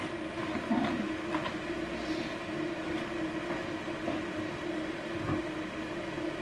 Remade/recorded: recorded